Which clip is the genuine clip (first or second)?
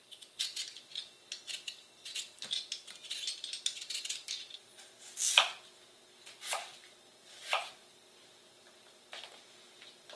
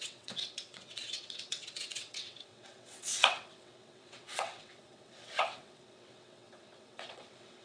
first